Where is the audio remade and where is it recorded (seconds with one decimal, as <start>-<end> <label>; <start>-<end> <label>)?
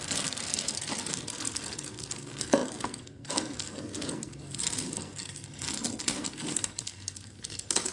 0.0-7.9 remade